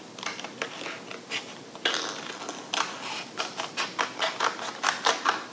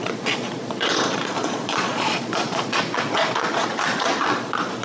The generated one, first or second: second